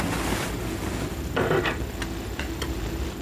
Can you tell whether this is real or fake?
real